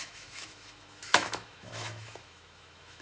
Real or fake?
fake